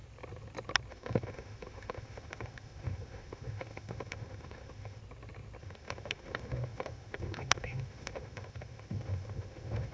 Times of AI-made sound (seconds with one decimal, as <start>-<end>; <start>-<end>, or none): 0.9-5.0; 5.6-9.9